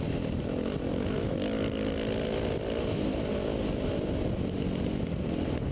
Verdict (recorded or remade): recorded